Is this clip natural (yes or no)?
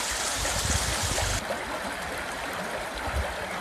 yes